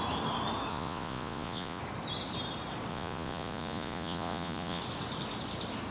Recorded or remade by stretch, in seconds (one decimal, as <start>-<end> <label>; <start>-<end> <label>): 0.0-0.7 recorded; 0.7-1.8 remade; 1.8-2.9 recorded; 2.9-4.8 remade; 4.8-5.9 recorded